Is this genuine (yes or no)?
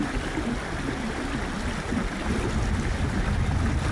yes